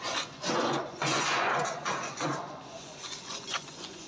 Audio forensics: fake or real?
fake